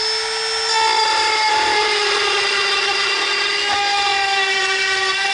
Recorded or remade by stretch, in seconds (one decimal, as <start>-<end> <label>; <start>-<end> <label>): 0.0-1.5 recorded; 1.5-2.5 remade; 2.5-4.1 recorded; 4.1-5.3 remade